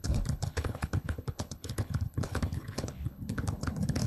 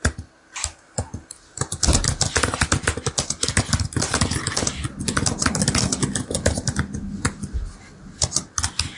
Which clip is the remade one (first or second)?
first